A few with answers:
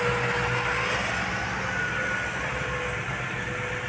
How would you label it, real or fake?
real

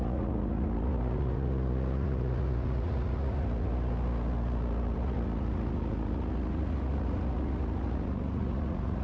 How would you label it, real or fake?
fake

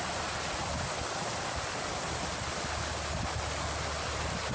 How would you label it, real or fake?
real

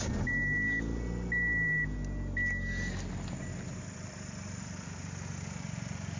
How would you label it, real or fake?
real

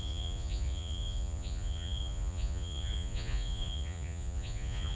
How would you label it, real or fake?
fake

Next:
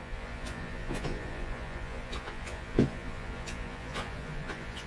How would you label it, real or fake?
fake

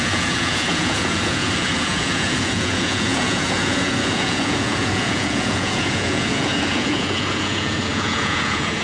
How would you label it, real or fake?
fake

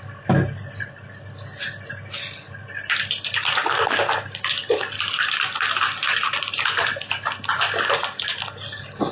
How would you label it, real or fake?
real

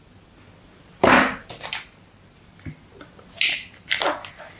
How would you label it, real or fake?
real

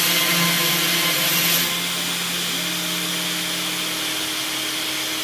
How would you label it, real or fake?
real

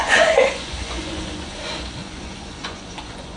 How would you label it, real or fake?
fake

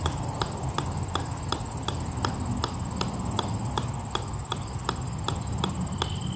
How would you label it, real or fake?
real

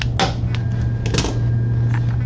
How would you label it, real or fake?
real